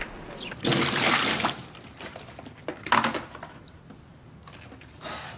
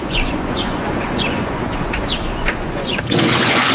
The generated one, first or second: second